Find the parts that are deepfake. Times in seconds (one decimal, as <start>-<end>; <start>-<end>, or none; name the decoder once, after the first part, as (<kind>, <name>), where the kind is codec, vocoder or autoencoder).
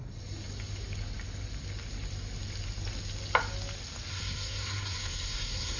4.1-5.8 (codec, SNAC)